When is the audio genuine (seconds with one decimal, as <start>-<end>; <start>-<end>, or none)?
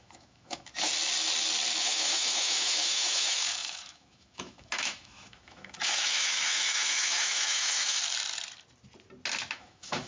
0.9-1.8; 8.0-9.5